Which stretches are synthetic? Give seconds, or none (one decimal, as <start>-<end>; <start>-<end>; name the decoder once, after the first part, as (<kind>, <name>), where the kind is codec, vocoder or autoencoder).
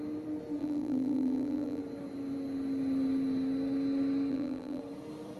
0.6-1.8 (vocoder, BigVGAN v2); 4.3-4.8